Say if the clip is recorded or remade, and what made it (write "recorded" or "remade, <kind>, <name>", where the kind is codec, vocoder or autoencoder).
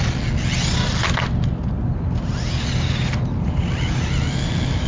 recorded